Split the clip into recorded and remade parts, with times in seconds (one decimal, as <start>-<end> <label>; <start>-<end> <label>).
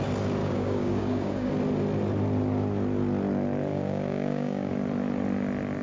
0.0-0.4 recorded; 0.4-1.5 remade; 1.5-3.7 recorded; 3.7-4.7 remade; 4.7-5.8 recorded